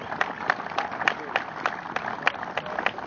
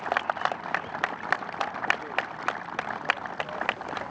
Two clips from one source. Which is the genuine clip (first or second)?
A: first